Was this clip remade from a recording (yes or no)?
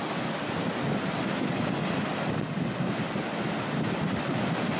no